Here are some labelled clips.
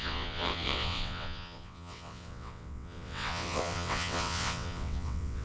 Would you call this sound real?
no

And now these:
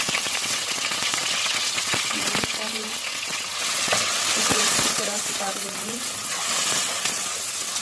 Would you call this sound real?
no